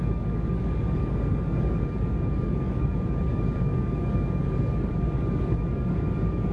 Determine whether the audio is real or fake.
fake